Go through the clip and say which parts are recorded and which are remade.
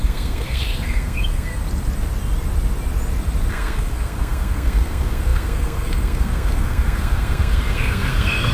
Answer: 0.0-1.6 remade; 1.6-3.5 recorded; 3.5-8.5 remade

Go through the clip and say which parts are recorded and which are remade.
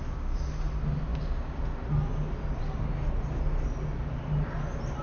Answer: 0.0-5.0 recorded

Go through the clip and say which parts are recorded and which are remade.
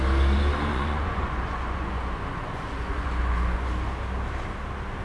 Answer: 0.0-0.7 recorded; 0.7-3.7 remade; 3.7-5.0 recorded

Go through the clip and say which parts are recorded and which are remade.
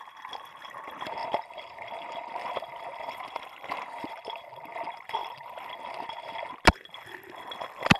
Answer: 0.0-1.2 recorded; 1.2-4.1 remade; 4.1-5.2 recorded; 5.2-6.5 remade; 6.5-8.0 recorded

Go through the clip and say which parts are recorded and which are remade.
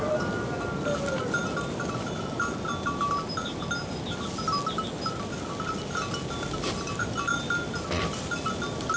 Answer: 0.0-9.0 recorded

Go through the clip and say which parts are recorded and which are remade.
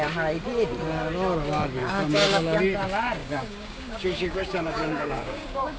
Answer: 0.0-1.8 recorded; 1.8-2.6 remade; 2.6-3.2 recorded; 3.2-5.8 remade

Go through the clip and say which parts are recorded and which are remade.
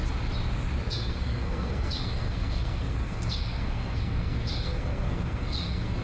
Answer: 0.0-0.9 recorded; 0.9-6.0 remade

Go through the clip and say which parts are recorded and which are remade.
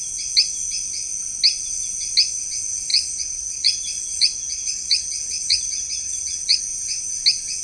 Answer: 0.0-2.9 recorded; 2.9-6.6 remade; 6.6-7.6 recorded